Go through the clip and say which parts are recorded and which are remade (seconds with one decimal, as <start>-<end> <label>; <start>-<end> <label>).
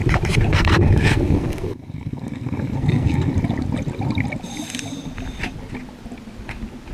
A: 0.0-0.5 recorded; 0.5-3.3 remade; 3.3-6.9 recorded